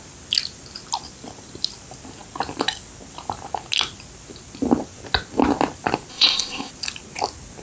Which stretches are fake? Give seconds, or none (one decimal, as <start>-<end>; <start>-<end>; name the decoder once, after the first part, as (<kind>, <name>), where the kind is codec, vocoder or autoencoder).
6.1-6.7 (codec, ZipCodec)